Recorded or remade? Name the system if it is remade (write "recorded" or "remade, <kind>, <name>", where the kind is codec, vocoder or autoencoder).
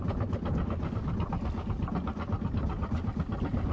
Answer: recorded